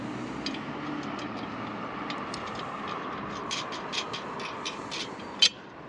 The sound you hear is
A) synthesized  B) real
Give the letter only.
B